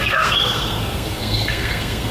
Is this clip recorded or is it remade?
remade